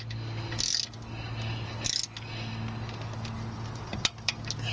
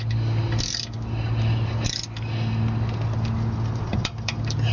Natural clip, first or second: first